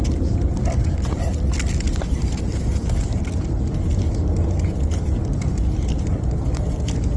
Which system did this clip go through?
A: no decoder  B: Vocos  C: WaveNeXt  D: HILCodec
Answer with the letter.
A